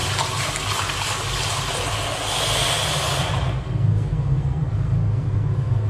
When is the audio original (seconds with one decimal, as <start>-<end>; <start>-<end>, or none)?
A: 0.0-3.5